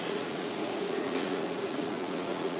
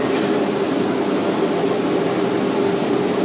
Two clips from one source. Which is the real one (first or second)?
second